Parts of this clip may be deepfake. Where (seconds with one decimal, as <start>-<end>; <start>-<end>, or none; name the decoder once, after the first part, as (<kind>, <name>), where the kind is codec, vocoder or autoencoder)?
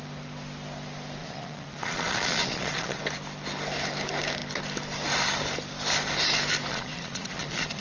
1.2-3.0 (vocoder, Vocos); 6.7-7.8